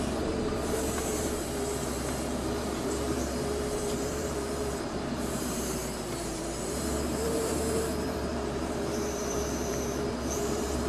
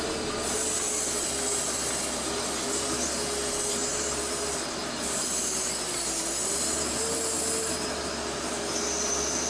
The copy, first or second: first